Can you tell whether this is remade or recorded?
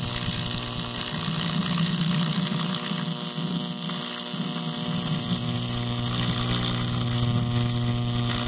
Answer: recorded